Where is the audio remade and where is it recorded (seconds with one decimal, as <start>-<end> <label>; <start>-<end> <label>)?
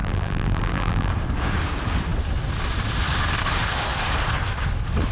0.0-1.1 remade; 1.1-5.1 recorded